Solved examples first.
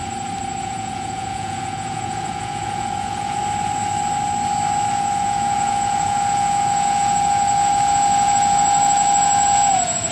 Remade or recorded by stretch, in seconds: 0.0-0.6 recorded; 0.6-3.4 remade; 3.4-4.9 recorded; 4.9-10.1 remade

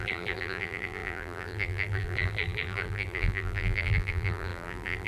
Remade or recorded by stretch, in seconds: 0.0-5.1 remade